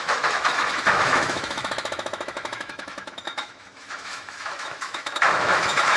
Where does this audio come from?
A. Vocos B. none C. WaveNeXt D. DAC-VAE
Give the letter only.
D